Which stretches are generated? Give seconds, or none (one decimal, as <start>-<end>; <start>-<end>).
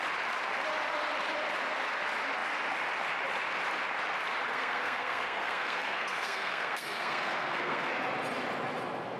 4.5-7.9